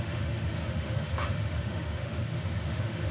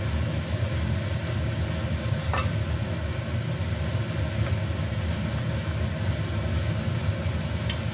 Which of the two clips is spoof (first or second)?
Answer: first